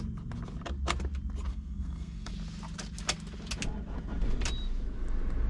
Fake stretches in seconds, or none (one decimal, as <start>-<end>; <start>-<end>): 1.5-2.3

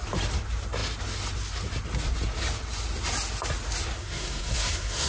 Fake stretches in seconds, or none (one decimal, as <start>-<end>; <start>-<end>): 4.0-5.1

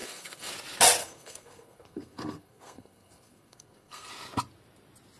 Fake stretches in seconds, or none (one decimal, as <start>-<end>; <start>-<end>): 0.0-0.5; 1.0-4.1

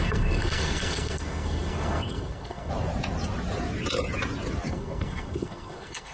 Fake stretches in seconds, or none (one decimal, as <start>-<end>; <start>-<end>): 0.0-2.7; 4.7-6.1

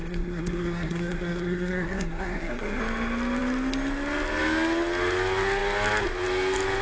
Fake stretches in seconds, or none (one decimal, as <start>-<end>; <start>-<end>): 0.0-2.8